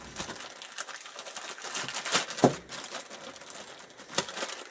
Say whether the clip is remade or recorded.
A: recorded